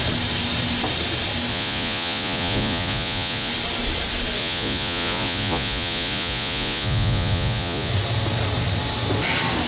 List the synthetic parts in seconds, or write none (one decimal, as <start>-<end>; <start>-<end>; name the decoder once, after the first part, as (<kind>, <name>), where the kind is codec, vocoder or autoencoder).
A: 1.5-3.5 (vocoder, Vocos); 4.4-7.9